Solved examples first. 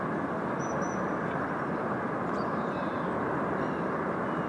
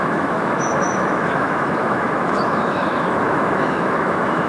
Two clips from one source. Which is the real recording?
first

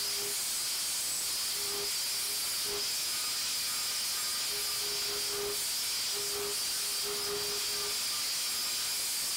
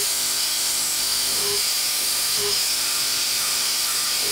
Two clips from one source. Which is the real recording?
first